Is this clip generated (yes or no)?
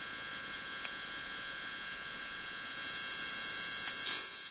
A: yes